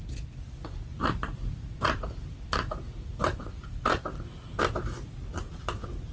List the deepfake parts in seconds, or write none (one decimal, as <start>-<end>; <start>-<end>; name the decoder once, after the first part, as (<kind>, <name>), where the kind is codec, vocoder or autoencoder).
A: 0.9-4.6 (vocoder, BigVGAN v2)